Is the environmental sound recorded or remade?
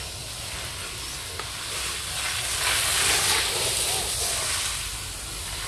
recorded